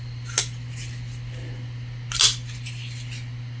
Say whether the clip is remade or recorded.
recorded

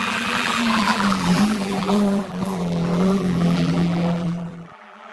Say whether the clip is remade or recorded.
remade